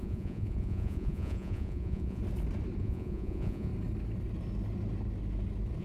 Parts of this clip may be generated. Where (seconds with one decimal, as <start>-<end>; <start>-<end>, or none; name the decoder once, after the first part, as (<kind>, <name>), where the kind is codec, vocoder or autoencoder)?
0.0-2.2 (vocoder, Vocos); 2.8-3.7